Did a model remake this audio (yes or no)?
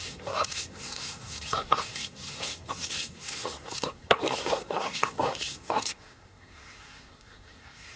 yes